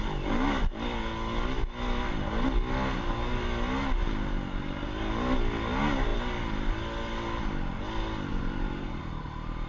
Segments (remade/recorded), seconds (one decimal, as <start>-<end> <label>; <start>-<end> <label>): 0.0-8.3 recorded; 8.3-9.0 remade; 9.0-9.7 recorded

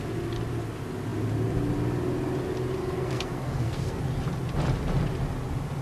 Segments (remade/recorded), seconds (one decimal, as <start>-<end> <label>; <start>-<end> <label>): 0.0-2.8 recorded; 2.8-4.0 remade; 4.0-5.8 recorded

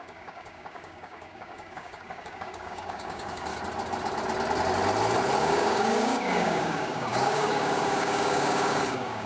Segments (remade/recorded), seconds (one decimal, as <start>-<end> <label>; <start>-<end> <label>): 0.0-3.5 remade; 3.5-5.4 recorded; 5.4-9.3 remade

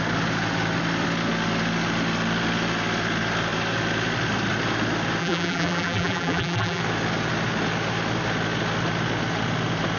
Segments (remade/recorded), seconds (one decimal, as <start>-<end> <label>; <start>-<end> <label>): 0.0-5.2 recorded; 5.2-6.8 remade; 6.8-10.0 recorded

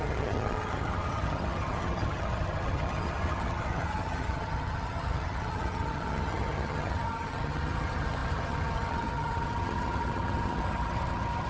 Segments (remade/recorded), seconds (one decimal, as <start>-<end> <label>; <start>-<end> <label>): 0.0-11.5 remade